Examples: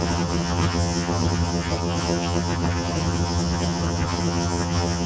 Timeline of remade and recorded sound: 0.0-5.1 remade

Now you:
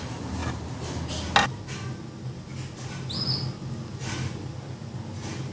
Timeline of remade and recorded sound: 0.0-5.5 recorded

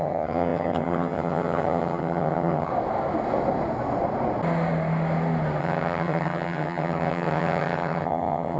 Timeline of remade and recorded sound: 0.0-2.7 remade; 2.7-5.6 recorded; 5.6-8.6 remade

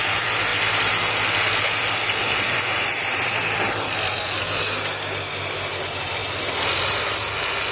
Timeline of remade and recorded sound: 0.0-7.7 recorded

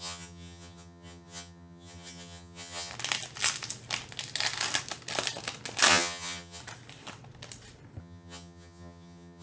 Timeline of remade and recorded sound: 0.0-2.9 remade; 2.9-5.9 recorded; 5.9-6.6 remade; 6.6-8.0 recorded; 8.0-9.4 remade

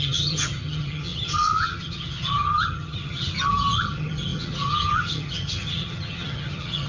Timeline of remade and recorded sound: 0.0-6.9 remade

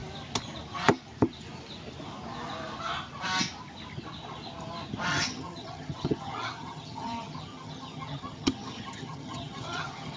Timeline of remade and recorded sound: 0.0-5.1 recorded; 5.1-10.2 remade

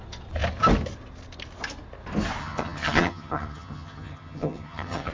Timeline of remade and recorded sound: 0.0-2.4 recorded; 2.4-5.1 remade